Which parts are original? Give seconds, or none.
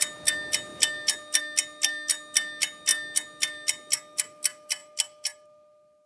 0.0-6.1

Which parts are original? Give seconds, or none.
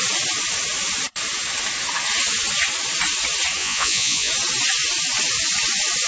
0.0-3.6; 4.3-6.1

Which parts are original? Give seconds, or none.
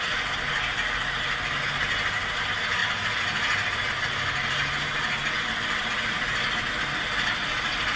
0.0-8.0